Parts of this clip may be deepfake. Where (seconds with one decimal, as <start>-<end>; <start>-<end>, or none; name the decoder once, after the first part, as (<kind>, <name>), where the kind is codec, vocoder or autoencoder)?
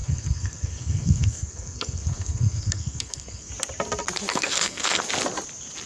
0.0-3.5 (codec, SNAC); 4.3-5.0